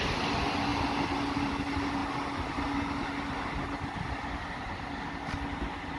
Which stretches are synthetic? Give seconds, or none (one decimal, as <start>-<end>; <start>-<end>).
none